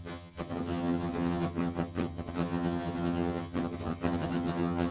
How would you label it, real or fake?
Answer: fake